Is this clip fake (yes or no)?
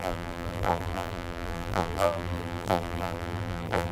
yes